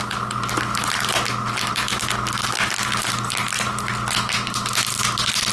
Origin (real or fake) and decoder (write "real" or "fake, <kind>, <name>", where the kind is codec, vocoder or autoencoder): real